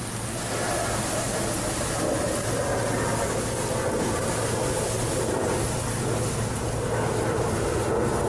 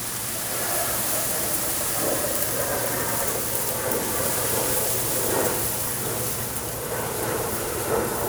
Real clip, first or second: first